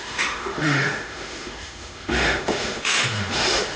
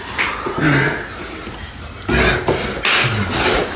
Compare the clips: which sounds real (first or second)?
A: second